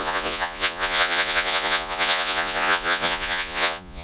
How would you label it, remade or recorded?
remade